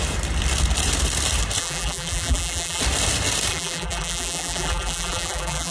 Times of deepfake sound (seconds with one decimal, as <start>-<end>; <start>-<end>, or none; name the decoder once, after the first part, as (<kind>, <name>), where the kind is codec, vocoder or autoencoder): 1.6-2.8 (vocoder, BigVGAN v2); 3.5-5.7